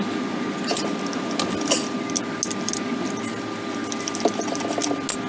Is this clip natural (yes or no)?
yes